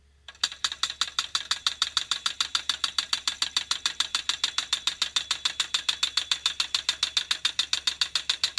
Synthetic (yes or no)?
no